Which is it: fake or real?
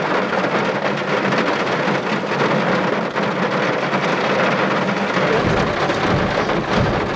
real